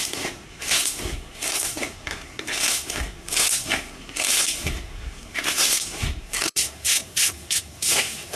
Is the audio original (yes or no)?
no